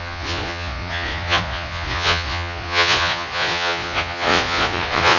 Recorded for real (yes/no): no